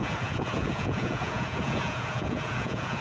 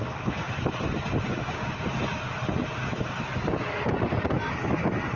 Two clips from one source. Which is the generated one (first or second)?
first